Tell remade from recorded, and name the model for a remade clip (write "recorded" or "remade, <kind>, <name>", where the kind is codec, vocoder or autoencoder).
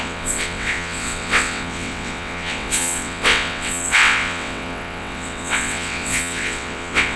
remade, vocoder, WaveNeXt